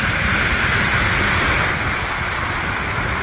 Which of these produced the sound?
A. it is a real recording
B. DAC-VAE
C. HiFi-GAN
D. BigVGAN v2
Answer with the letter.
A